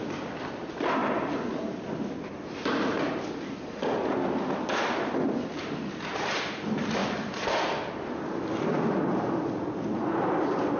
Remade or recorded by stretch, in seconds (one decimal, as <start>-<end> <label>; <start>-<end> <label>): 0.0-10.8 remade